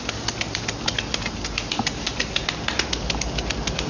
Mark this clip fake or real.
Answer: real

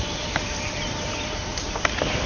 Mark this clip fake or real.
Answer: real